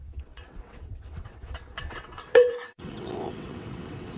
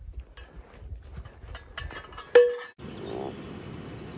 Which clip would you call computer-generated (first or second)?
first